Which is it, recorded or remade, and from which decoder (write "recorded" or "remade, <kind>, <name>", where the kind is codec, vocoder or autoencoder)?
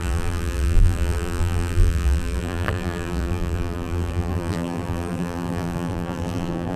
remade, vocoder, BigVGAN v2